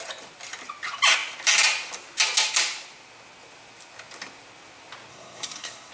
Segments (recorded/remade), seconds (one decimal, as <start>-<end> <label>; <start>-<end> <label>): 0.0-5.1 recorded; 5.1-5.9 remade